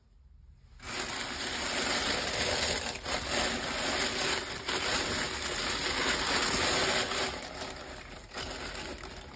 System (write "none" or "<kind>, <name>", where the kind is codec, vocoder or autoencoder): none